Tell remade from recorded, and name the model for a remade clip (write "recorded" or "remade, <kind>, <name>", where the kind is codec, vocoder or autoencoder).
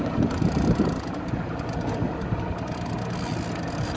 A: recorded